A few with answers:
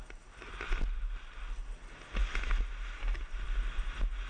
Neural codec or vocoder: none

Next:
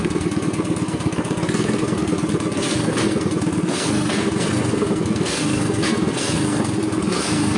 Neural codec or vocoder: codec, SNAC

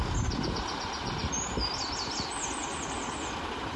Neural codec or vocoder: none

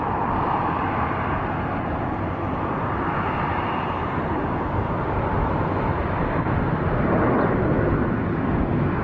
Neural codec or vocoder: none